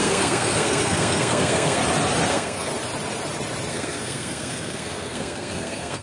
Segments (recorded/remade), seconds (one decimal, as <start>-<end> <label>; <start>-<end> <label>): 0.0-1.8 remade; 1.8-2.3 recorded; 2.3-2.7 remade; 2.7-3.7 recorded; 3.7-6.0 remade